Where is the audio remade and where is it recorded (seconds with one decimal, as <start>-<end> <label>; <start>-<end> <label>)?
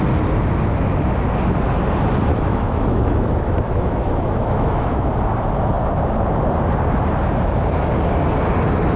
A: 0.0-2.3 recorded; 2.3-5.1 remade; 5.1-9.0 recorded